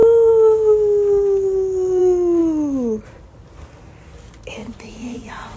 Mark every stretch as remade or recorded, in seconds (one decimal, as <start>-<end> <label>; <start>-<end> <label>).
0.0-4.6 recorded; 4.6-5.6 remade